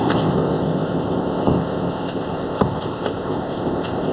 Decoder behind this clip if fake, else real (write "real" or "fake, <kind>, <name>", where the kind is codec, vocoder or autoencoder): fake, codec, ZipCodec